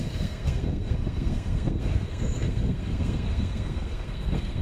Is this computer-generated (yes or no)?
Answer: yes